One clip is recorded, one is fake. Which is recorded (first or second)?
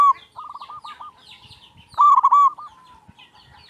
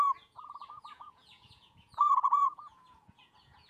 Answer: first